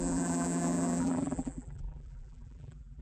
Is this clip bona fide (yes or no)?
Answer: no